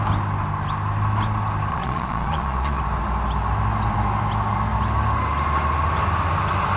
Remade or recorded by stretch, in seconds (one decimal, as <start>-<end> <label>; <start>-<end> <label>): 0.0-1.7 recorded; 1.7-2.8 remade; 2.8-6.8 recorded